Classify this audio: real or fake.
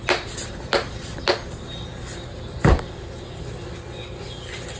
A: real